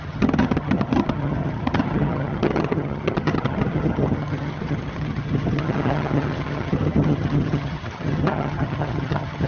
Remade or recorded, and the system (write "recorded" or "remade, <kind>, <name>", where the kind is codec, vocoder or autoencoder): remade, vocoder, HiFi-GAN